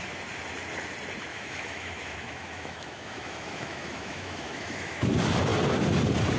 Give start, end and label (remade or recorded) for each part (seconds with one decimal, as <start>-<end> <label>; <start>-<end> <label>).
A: 0.0-1.3 recorded; 1.3-5.1 remade; 5.1-6.4 recorded